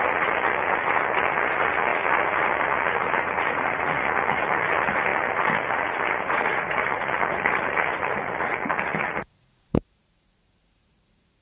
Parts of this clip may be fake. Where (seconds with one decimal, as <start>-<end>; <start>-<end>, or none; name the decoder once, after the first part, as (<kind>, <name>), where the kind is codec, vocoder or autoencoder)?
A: 0.0-11.4 (vocoder, Vocos)